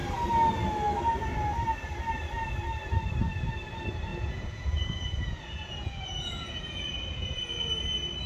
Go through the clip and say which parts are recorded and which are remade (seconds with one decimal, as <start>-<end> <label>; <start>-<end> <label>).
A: 0.0-4.1 recorded; 4.1-7.7 remade; 7.7-8.3 recorded